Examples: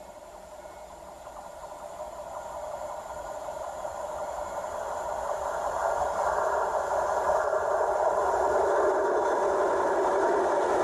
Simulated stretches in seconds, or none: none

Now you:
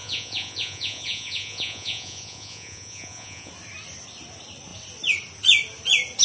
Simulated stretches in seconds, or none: 0.0-3.5 (vocoder, Vocos)